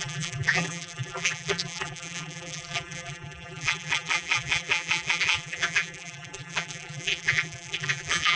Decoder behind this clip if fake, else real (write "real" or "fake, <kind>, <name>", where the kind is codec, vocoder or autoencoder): fake, vocoder, BigVGAN v2